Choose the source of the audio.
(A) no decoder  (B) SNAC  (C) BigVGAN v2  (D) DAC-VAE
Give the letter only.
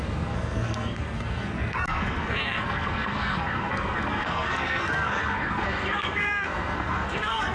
B